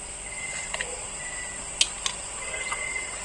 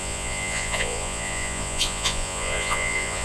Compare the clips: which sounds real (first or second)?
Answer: first